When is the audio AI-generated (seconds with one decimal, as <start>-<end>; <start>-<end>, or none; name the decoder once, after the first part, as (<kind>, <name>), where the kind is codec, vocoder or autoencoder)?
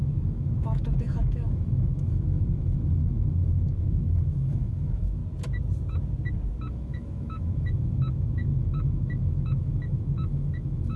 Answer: 0.0-5.2 (autoencoder, DAC-VAE); 6.7-11.0